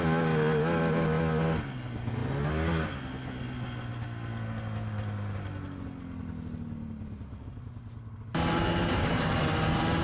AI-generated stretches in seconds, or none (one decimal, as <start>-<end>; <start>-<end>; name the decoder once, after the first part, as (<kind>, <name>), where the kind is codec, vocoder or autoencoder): none